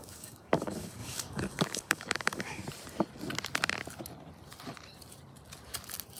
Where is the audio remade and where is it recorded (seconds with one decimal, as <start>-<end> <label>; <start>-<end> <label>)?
0.0-2.6 remade; 2.6-6.2 recorded